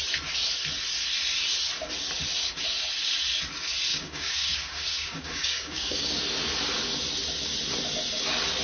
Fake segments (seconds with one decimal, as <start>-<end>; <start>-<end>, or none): 3.9-6.1